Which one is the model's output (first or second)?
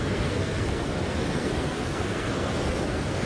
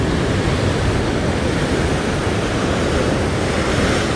first